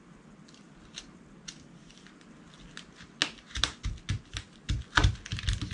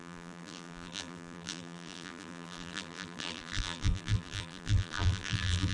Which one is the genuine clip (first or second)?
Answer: first